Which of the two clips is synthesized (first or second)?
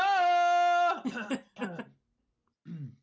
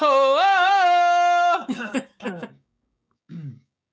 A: second